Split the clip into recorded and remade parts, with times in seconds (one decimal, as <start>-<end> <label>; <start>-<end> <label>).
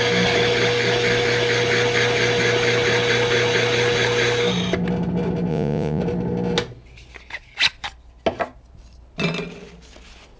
0.0-5.5 recorded; 5.5-6.0 remade; 6.0-10.4 recorded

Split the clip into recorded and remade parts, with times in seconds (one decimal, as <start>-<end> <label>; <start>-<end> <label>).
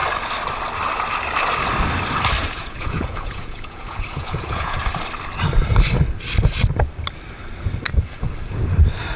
0.0-2.4 recorded; 2.4-4.8 remade; 4.8-9.2 recorded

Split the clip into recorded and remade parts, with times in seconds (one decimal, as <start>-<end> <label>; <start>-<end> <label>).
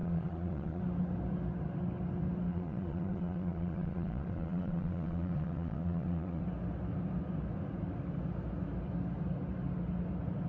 0.0-0.8 remade; 0.8-2.5 recorded; 2.5-6.4 remade; 6.4-10.5 recorded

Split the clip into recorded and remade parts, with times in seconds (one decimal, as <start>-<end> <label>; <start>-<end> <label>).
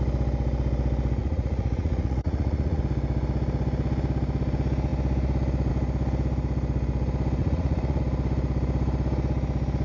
0.0-1.2 recorded; 1.2-2.8 remade; 2.8-7.4 recorded; 7.4-8.0 remade; 8.0-9.8 recorded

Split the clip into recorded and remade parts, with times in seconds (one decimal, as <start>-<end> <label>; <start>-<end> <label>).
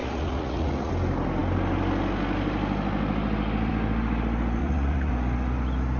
0.0-0.9 remade; 0.9-4.6 recorded; 4.6-5.1 remade; 5.1-6.0 recorded